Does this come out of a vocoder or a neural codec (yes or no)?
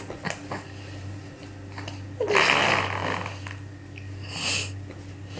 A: no